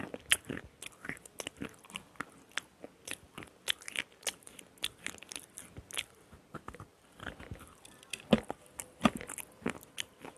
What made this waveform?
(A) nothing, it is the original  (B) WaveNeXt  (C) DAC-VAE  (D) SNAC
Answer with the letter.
A